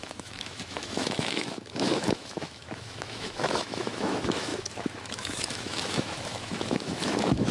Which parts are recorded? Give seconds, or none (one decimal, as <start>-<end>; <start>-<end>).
none